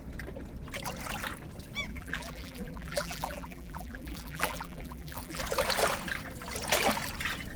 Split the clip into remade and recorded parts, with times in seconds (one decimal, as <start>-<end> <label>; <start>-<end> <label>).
0.0-1.9 recorded; 1.9-5.4 remade; 5.4-7.6 recorded